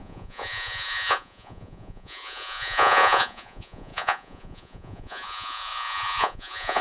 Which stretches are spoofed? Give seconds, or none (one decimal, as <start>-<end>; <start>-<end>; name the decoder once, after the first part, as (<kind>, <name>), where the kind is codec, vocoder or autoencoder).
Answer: 0.0-6.8 (vocoder, Vocos)